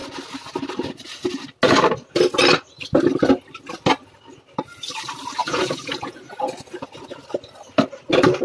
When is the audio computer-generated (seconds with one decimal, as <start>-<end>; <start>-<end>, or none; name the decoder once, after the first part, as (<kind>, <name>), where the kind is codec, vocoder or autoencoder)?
5.4-6.2 (vocoder, Vocos)